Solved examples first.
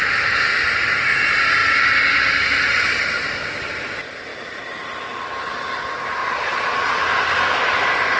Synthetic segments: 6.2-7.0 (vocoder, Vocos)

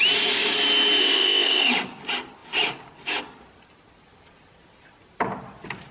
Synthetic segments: 1.0-1.7 (codec, ZipCodec)

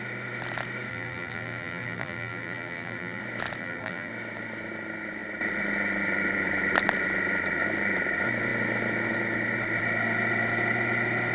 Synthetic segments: 0.9-3.2 (vocoder, BigVGAN v2); 3.6-4.1

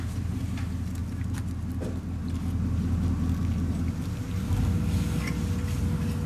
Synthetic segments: none

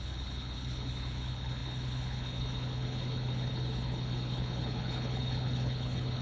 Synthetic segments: 0.0-6.2 (codec, HILCodec)

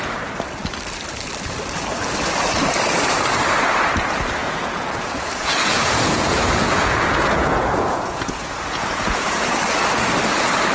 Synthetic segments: 4.4-9.6 (vocoder, Vocos)